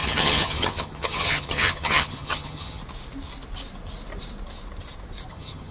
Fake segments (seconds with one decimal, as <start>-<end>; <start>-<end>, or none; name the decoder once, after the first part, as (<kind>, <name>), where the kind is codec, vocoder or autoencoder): 0.0-2.8 (vocoder, HiFi-GAN); 5.3-5.7